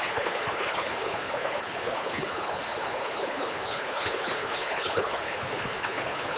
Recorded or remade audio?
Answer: remade